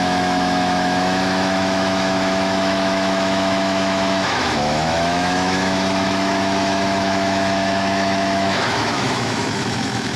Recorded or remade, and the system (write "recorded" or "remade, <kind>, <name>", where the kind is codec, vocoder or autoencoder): remade, autoencoder, DAC-VAE